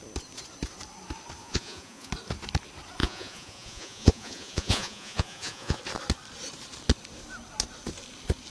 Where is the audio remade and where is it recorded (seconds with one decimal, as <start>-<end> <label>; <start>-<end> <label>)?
0.0-1.4 recorded; 1.4-2.1 remade; 2.1-3.0 recorded; 3.0-5.8 remade; 5.8-8.5 recorded